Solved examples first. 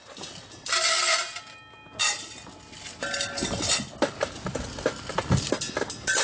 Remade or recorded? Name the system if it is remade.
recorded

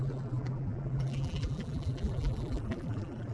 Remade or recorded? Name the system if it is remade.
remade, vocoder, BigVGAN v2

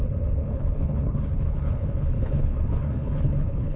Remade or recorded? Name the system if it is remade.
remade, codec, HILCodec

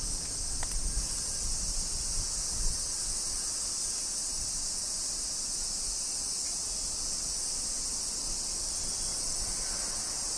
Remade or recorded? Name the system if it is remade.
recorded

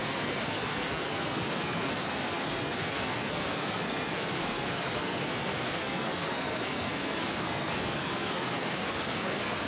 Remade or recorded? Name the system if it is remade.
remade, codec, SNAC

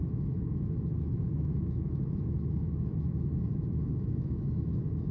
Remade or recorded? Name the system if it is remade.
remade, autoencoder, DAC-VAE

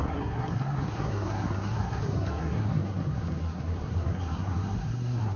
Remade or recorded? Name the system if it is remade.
remade, codec, SNAC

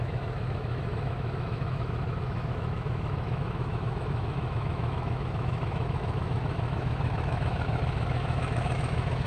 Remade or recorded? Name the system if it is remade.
remade, autoencoder, DAC-VAE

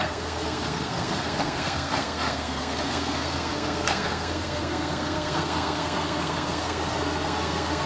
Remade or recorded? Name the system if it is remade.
remade, codec, SNAC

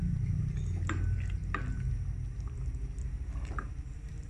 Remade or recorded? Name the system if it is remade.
recorded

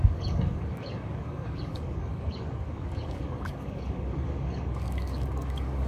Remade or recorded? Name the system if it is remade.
remade, codec, DAC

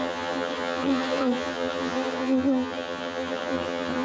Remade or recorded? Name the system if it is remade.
remade, vocoder, HiFi-GAN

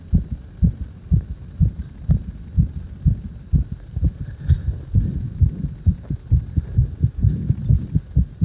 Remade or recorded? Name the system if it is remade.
recorded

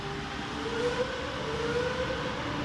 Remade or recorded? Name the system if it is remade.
recorded